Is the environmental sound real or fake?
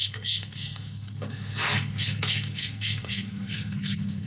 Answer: fake